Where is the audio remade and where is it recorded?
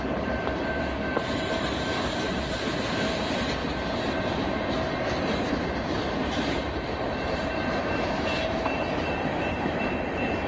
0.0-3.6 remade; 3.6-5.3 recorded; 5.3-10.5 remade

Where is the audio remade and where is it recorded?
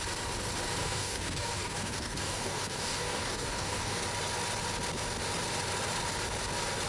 0.0-0.8 recorded; 0.8-4.0 remade; 4.0-6.9 recorded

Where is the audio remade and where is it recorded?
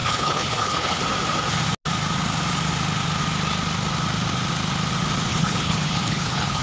0.0-1.0 remade; 1.0-5.3 recorded; 5.3-6.6 remade